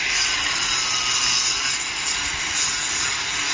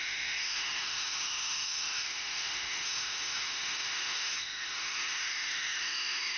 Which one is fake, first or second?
second